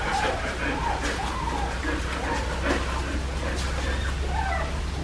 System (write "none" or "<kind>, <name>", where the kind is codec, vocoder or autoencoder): none